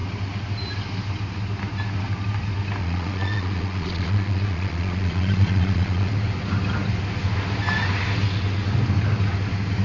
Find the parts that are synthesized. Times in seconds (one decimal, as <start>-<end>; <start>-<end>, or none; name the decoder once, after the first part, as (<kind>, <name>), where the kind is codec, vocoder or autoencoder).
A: 2.8-6.1 (vocoder, Vocos)